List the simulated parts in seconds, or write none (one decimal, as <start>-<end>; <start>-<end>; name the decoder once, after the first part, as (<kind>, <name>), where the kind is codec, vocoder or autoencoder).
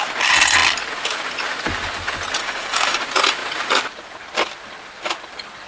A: 2.4-3.0 (codec, DAC)